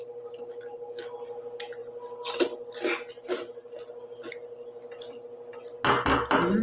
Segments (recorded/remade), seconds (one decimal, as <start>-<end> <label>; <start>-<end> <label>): 0.0-6.6 recorded